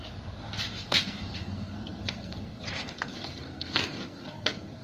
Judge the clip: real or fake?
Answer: fake